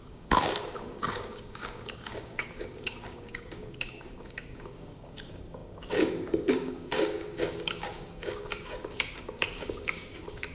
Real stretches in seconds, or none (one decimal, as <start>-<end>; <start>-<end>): none